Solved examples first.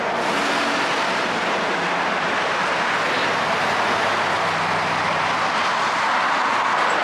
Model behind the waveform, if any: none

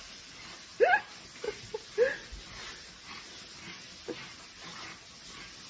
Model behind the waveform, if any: none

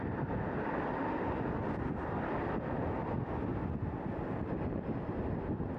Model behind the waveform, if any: none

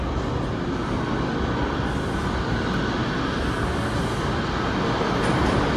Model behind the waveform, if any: none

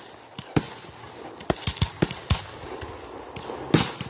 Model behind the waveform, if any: none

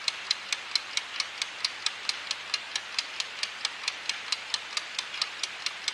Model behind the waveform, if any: none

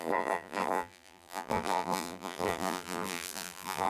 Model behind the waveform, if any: vocoder, BigVGAN v2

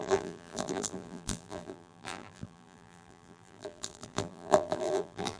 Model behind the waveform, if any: vocoder, BigVGAN v2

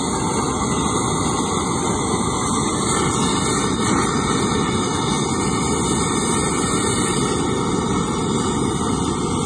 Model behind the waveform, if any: none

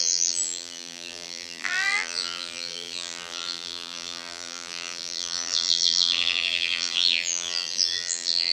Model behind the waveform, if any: vocoder, BigVGAN v2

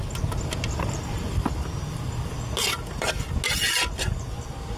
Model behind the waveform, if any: none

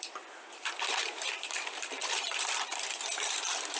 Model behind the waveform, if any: vocoder, BigVGAN v2